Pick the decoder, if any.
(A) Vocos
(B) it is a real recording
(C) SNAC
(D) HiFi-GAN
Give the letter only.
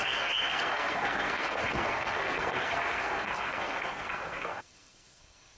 C